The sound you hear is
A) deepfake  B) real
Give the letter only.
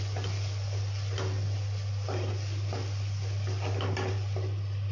B